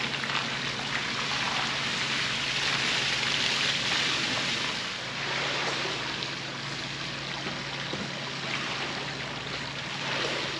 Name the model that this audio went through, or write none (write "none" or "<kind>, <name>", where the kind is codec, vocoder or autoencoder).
none